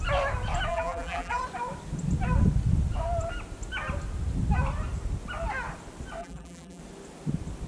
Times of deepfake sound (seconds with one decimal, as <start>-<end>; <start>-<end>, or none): 0.7-1.4; 6.2-6.8